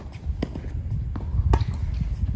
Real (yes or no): yes